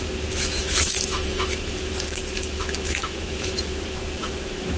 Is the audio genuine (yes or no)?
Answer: no